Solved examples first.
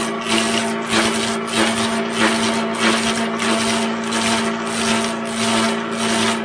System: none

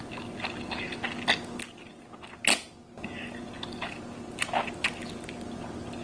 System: none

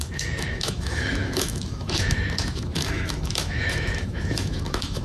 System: autoencoder, DAC-VAE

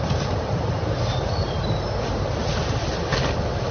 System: none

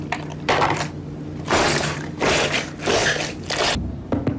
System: none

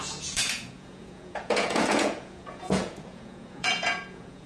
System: vocoder, Vocos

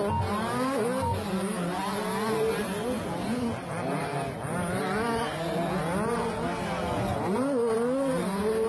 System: none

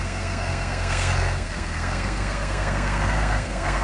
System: codec, SNAC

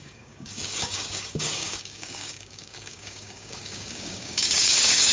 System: codec, DAC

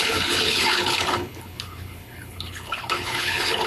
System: codec, HILCodec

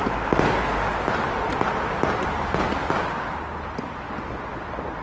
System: none